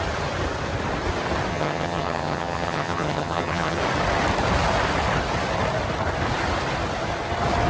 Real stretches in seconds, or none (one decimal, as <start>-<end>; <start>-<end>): 0.0-1.5; 3.8-7.7